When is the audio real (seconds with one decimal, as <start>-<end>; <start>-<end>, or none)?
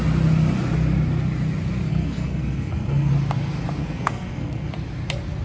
0.0-1.9; 3.1-3.8; 4.7-5.4